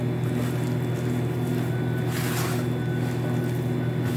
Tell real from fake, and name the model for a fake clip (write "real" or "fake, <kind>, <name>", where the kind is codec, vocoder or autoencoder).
real